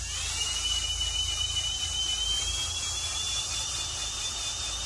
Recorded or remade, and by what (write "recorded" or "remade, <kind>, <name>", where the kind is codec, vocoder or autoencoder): recorded